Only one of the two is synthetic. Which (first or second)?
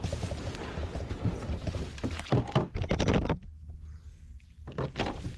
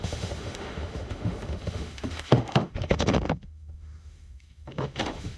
second